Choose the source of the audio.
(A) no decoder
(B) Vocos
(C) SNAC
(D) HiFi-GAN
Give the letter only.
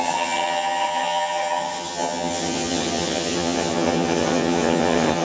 D